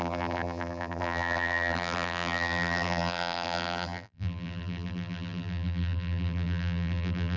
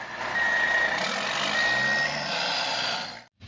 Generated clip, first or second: first